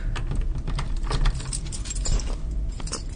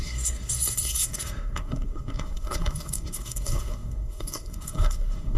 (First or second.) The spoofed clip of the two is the second